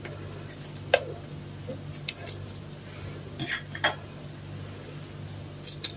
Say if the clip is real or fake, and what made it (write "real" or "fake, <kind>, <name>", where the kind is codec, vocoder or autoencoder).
real